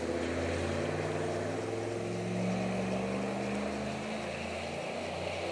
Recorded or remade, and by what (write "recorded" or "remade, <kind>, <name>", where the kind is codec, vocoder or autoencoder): recorded